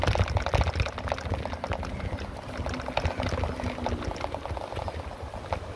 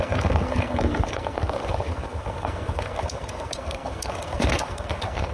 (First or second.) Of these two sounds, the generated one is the second